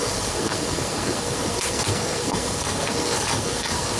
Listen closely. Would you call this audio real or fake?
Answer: fake